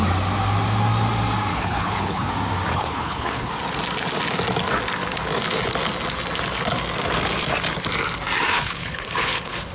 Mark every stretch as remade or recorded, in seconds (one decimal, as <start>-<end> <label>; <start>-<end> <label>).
0.0-1.5 recorded; 1.5-2.3 remade; 2.3-2.7 recorded; 2.7-3.5 remade; 3.5-8.5 recorded; 8.5-9.7 remade